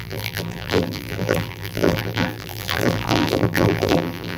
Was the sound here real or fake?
fake